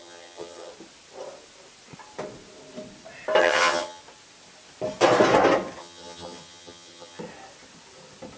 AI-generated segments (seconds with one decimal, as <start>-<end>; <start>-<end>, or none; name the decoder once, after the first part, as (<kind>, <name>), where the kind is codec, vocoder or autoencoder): 0.0-0.7 (vocoder, HiFi-GAN); 3.4-4.0; 5.8-7.2